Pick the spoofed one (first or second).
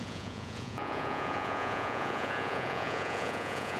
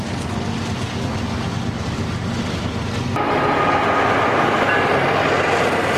first